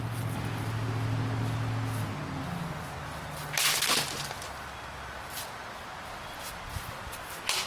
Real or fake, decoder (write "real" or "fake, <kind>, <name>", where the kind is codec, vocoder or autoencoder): real